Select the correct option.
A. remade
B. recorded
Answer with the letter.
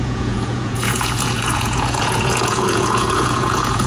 A